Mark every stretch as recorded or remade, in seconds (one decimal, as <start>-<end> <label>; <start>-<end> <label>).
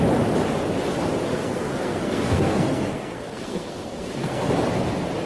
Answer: 0.0-1.3 recorded; 1.3-4.5 remade; 4.5-5.3 recorded